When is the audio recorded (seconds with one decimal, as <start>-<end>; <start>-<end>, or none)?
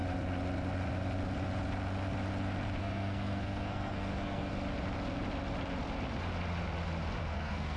0.0-2.8; 4.5-7.2